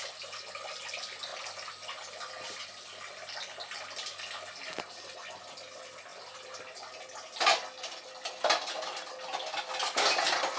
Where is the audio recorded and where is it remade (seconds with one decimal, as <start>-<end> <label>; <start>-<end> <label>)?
0.0-10.6 recorded